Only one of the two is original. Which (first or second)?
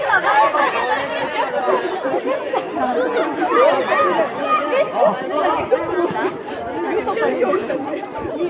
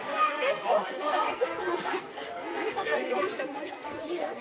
first